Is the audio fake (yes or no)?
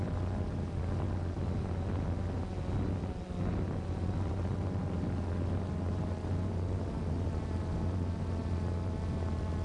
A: no